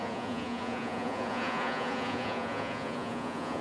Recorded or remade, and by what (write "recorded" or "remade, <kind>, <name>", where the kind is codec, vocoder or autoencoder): remade, vocoder, Vocos